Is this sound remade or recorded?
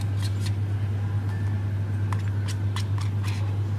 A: recorded